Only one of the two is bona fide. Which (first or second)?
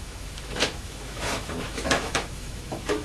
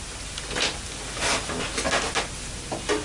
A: second